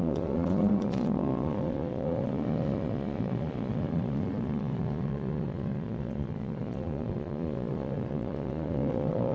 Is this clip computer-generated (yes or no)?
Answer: yes